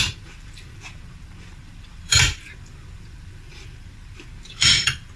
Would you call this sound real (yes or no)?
no